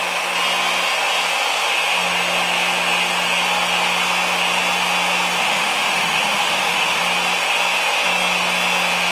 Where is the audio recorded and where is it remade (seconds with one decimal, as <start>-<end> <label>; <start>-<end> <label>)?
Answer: 0.0-5.4 recorded; 5.4-7.0 remade; 7.0-9.1 recorded